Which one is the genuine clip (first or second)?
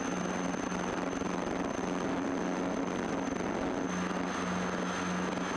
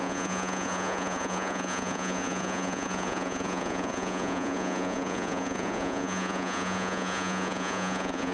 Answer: first